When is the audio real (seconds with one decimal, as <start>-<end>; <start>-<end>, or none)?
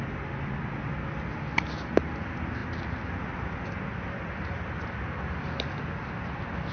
0.0-6.7